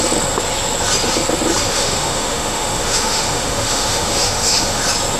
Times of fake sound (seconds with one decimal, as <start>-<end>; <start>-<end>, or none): 1.7-4.8

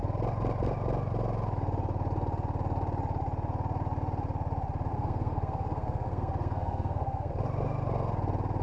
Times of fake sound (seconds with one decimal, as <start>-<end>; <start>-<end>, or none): 4.9-7.3

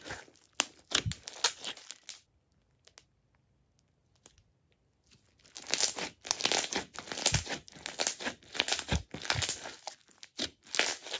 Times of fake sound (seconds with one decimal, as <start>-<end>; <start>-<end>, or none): none